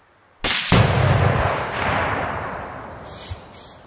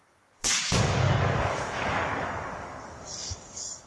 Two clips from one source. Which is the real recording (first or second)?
first